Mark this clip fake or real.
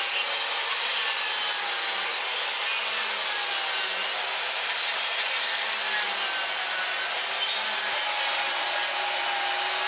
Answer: real